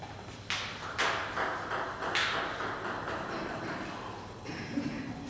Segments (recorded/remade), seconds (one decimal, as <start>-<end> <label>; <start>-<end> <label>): 0.0-5.3 recorded